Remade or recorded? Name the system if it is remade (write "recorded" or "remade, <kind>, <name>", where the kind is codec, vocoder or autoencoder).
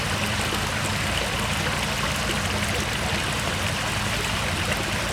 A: recorded